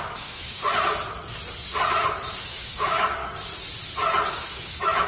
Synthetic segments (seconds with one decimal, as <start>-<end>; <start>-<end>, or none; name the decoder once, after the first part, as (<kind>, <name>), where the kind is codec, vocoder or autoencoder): 0.0-0.6 (autoencoder, DAC-VAE); 2.4-3.2; 4.3-5.1